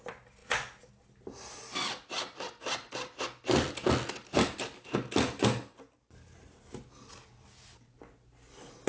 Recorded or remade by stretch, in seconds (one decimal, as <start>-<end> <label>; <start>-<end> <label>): 0.0-8.9 recorded